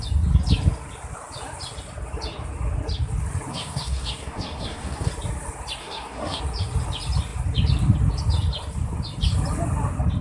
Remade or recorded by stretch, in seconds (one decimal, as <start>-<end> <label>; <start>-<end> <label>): 0.0-3.5 recorded; 3.5-5.1 remade; 5.1-5.8 recorded; 5.8-6.4 remade; 6.4-10.2 recorded